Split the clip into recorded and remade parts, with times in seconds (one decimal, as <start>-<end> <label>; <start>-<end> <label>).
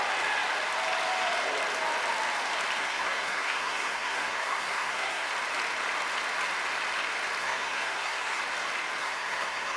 0.0-2.8 recorded; 2.8-5.3 remade; 5.3-7.4 recorded; 7.4-8.4 remade; 8.4-9.0 recorded; 9.0-9.8 remade